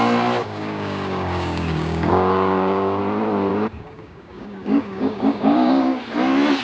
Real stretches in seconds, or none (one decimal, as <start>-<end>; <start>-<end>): 0.0-0.4; 3.0-3.5; 6.0-6.6